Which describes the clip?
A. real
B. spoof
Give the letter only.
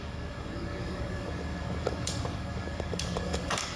B